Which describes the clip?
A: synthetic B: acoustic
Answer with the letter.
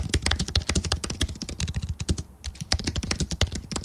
B